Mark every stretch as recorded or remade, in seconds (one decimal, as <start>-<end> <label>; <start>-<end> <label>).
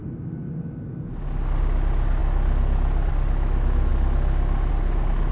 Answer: 0.0-5.3 recorded